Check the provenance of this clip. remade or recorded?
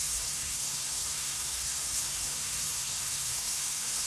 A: remade